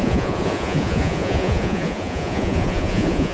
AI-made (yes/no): yes